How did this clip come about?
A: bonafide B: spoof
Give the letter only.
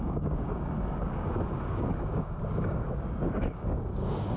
B